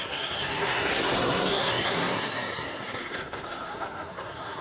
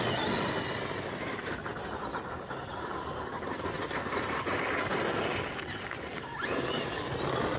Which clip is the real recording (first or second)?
second